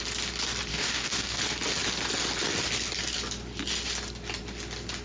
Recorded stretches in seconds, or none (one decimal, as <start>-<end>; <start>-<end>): 0.0-0.7; 1.4-5.0

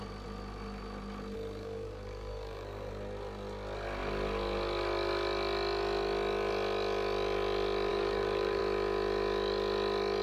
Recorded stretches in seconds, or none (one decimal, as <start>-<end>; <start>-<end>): 0.0-1.6; 2.9-7.9; 8.6-10.2

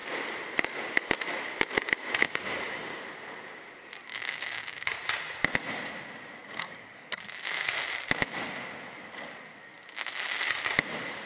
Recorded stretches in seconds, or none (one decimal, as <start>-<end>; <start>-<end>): 0.0-2.2; 3.0-4.1; 5.0-6.4; 7.1-11.3

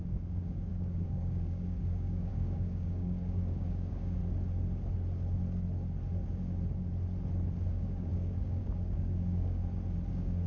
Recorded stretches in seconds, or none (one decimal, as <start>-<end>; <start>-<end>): 4.2-7.7; 9.6-10.1

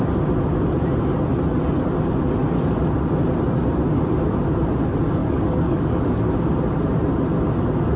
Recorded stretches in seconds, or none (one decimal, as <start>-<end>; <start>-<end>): 0.0-5.2; 6.2-8.0

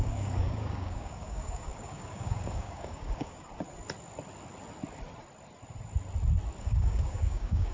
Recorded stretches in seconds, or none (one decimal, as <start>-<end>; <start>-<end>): 3.5-6.6